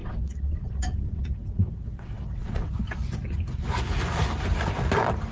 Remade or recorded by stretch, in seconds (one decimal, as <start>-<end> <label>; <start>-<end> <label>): 0.0-2.7 remade; 2.7-5.3 recorded